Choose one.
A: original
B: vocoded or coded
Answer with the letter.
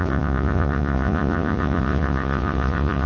B